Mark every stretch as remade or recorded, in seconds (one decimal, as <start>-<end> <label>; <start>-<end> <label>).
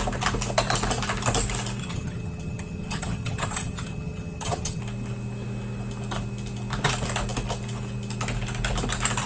0.0-1.8 recorded; 1.8-4.8 remade; 4.8-9.3 recorded